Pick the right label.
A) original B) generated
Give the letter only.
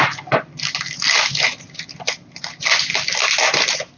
A